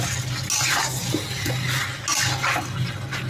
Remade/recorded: recorded